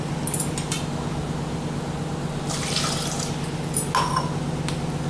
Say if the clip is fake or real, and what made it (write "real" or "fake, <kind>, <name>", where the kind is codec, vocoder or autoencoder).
real